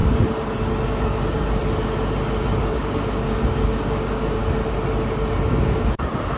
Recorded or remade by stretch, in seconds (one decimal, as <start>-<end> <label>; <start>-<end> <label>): 0.0-0.6 recorded; 0.6-1.6 remade; 1.6-2.6 recorded; 2.6-4.4 remade; 4.4-5.3 recorded; 5.3-6.4 remade